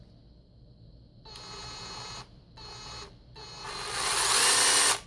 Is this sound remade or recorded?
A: recorded